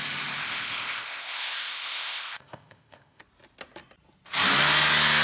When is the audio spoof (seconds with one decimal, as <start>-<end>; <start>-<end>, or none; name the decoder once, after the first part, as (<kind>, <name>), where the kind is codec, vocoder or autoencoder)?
0.4-3.2 (codec, ZipCodec)